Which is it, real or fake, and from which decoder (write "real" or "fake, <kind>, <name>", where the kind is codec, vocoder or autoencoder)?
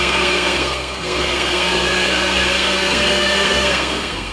fake, codec, SNAC